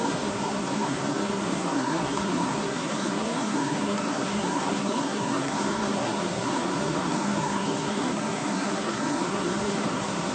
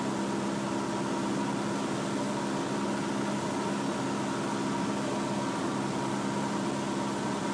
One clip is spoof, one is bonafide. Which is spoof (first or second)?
first